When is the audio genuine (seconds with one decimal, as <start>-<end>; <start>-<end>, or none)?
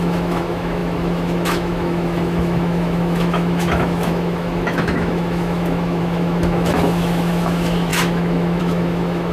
none